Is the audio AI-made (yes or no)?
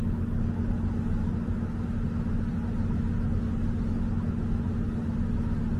no